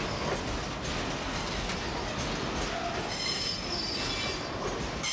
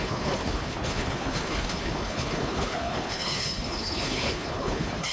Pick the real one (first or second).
first